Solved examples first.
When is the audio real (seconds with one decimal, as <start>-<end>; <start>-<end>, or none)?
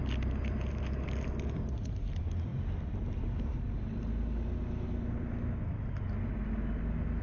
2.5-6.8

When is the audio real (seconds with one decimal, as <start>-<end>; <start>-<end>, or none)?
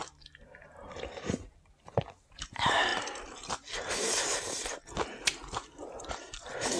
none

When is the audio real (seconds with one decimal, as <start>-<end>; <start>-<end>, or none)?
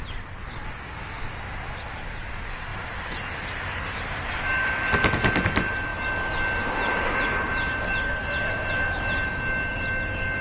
0.0-2.7; 4.1-8.2; 9.3-10.4